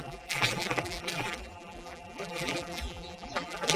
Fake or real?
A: fake